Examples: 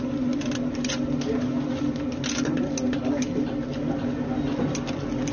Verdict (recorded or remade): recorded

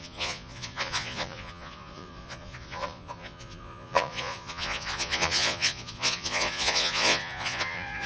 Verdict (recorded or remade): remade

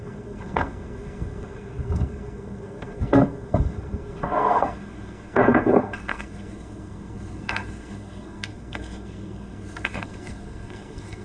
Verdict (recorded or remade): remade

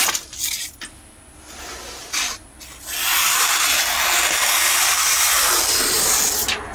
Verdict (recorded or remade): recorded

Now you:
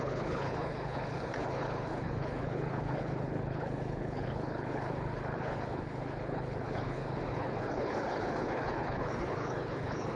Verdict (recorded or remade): remade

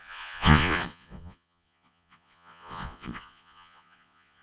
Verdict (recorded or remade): remade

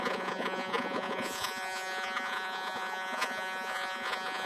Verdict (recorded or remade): remade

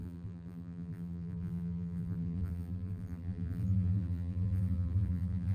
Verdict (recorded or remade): remade